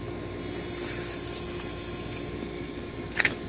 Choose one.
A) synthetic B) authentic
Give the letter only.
B